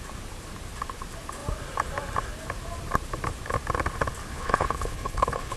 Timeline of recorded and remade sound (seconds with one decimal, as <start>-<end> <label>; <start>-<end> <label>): 0.0-4.3 recorded; 4.3-5.6 remade